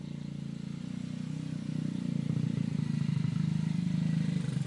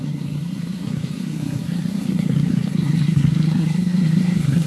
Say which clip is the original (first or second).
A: first